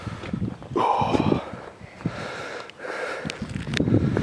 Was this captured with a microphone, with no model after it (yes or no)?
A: yes